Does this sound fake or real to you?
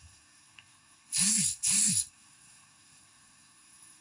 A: fake